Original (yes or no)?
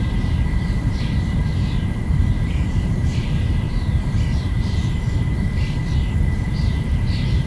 no